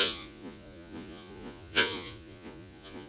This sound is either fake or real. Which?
fake